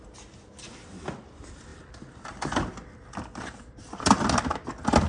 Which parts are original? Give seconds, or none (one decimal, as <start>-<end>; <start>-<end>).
0.0-5.1